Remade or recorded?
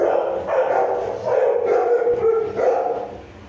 recorded